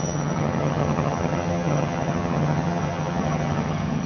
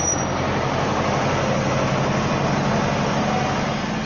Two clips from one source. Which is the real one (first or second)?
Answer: second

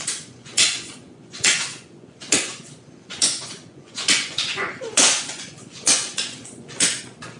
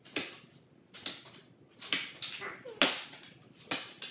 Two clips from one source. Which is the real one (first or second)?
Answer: second